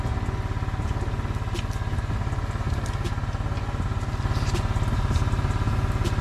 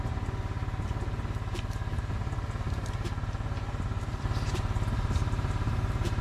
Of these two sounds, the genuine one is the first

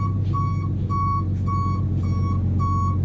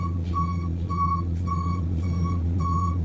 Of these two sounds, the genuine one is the first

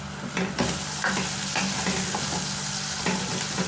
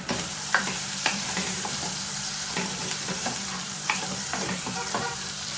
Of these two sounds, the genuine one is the first